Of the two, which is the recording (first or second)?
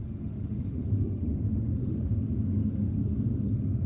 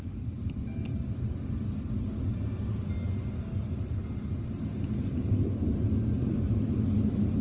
second